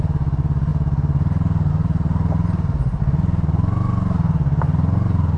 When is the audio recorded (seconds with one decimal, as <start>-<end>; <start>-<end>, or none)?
0.0-5.4